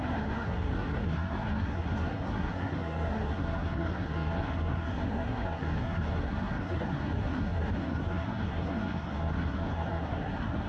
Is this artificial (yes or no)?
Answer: yes